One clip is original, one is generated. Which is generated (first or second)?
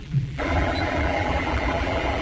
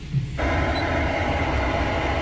first